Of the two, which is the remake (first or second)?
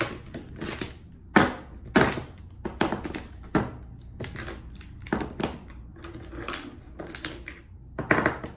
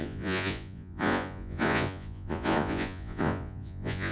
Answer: second